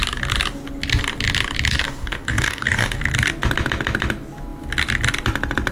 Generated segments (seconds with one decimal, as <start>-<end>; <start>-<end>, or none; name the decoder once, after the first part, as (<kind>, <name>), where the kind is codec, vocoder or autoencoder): 1.8-3.0 (codec, DAC)

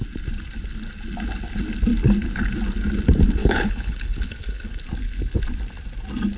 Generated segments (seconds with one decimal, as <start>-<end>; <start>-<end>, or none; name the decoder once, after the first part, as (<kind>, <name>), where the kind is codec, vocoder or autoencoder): 3.4-4.8 (codec, HILCodec)

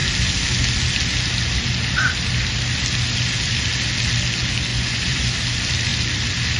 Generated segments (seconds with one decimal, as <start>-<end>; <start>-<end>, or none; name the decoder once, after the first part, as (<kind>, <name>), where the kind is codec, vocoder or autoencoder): 4.7-5.3 (vocoder, Vocos)